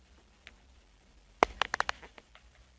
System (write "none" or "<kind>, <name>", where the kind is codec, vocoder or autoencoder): none